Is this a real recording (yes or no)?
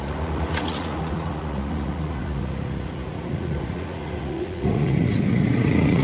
no